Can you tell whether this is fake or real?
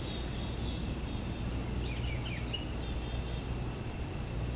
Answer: real